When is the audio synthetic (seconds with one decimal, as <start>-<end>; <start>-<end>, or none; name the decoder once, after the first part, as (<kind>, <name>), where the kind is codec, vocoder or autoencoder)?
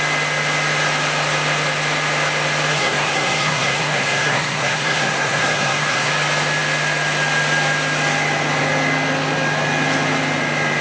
2.7-6.1 (codec, SNAC)